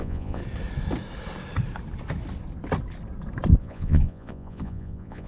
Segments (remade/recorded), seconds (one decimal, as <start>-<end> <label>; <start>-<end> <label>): 0.0-0.4 remade; 0.4-3.6 recorded; 3.6-5.3 remade